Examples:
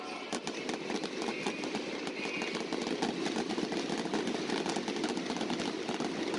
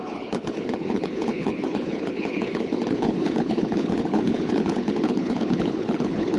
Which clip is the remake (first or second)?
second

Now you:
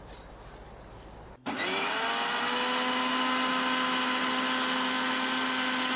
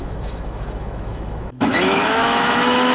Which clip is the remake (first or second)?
second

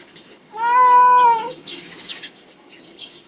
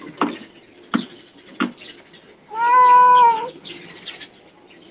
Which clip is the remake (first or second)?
first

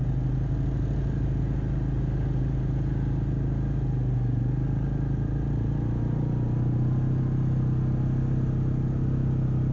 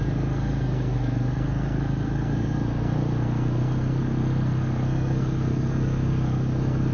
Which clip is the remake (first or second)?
second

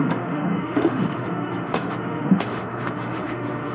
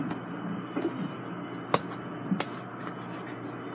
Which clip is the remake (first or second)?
first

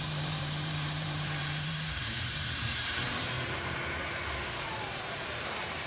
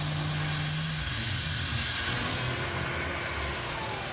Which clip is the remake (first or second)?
first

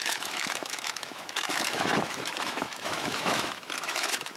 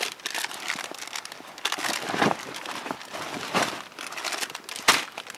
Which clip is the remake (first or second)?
first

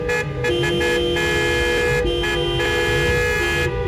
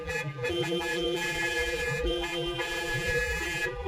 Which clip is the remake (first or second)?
second